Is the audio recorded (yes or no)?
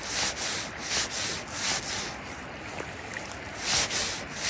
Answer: yes